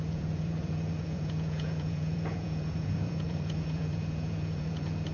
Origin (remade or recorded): remade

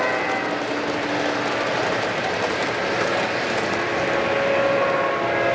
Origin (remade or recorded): recorded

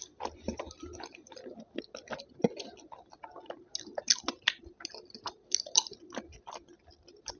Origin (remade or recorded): recorded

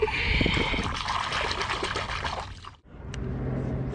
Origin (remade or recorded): recorded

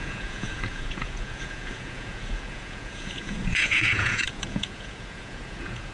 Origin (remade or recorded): remade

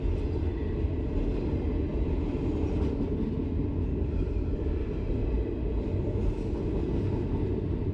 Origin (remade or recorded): recorded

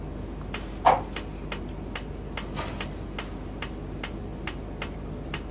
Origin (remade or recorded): recorded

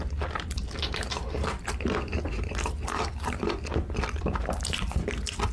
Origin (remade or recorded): remade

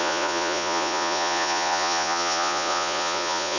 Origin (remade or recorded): remade